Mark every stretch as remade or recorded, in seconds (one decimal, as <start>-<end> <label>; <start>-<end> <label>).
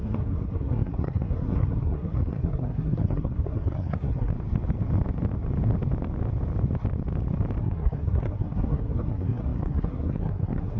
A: 0.0-4.3 remade; 4.3-7.6 recorded; 7.6-10.8 remade